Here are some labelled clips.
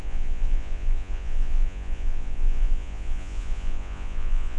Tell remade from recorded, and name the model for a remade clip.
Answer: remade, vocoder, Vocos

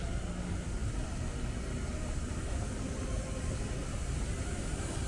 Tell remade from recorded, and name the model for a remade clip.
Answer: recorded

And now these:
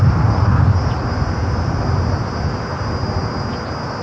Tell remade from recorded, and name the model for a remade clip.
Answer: recorded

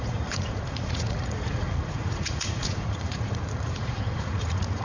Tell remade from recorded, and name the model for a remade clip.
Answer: remade, vocoder, Vocos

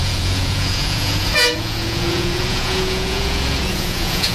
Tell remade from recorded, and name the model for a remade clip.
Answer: remade, vocoder, Vocos